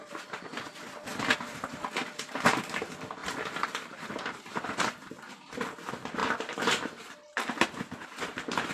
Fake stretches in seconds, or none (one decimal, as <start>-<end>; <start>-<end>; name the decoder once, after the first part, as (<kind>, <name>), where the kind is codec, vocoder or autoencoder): 0.0-0.5 (vocoder, BigVGAN v2); 2.2-8.7